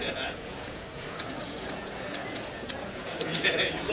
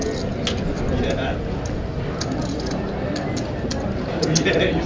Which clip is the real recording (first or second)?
second